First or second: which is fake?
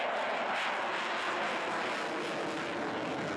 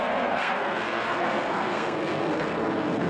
second